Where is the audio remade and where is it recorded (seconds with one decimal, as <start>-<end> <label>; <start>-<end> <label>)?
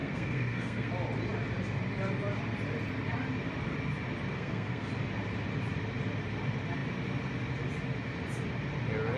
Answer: 0.0-0.9 remade; 0.9-4.3 recorded; 4.3-4.9 remade; 4.9-9.2 recorded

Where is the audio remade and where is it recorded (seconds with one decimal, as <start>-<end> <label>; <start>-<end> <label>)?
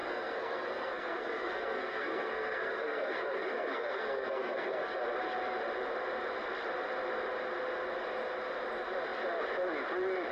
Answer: 0.0-5.0 remade; 5.0-10.3 recorded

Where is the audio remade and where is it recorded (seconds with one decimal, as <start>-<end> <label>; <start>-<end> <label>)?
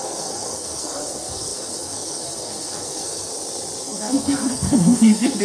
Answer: 0.0-3.3 remade; 3.3-3.8 recorded; 3.8-5.4 remade